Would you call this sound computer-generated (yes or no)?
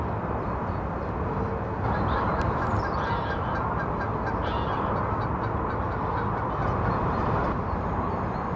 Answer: no